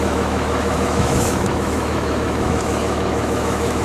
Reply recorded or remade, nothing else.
remade